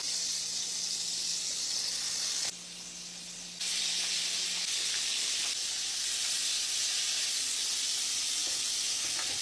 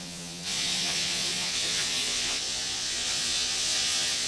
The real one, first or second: first